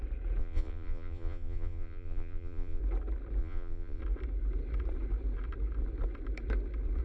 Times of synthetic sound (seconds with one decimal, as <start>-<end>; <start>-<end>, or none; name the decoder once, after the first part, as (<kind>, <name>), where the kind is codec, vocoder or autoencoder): 0.4-2.8 (vocoder, Vocos); 3.4-4.0